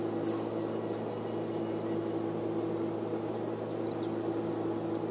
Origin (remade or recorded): recorded